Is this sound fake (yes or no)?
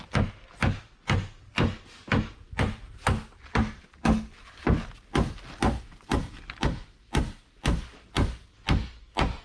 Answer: no